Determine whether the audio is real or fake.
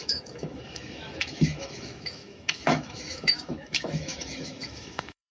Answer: fake